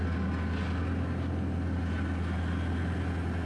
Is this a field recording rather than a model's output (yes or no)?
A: yes